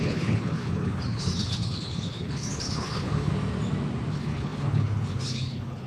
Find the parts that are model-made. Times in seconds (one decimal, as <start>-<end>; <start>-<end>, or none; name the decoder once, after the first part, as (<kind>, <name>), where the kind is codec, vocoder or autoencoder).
0.0-3.3 (codec, HILCodec); 4.1-5.9